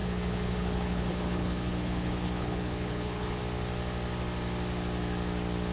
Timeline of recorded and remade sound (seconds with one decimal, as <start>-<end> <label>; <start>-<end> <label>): 0.0-3.4 remade; 3.4-5.7 recorded